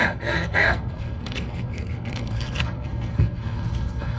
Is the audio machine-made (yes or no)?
yes